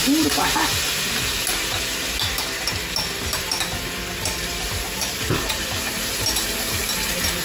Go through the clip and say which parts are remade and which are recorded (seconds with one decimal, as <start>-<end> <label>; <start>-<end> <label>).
0.0-4.4 recorded; 4.4-7.4 remade